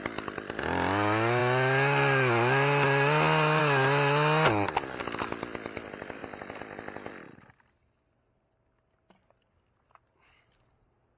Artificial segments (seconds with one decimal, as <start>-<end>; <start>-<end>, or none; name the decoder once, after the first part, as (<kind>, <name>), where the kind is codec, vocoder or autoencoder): none